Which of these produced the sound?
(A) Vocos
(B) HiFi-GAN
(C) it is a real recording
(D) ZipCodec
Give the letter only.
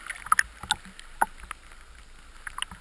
C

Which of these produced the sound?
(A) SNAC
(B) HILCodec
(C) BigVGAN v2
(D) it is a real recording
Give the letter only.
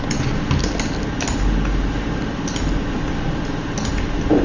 D